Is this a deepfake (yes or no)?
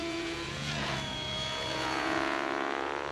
yes